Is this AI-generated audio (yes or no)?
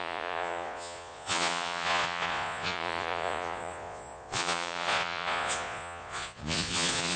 yes